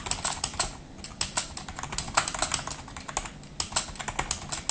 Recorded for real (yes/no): yes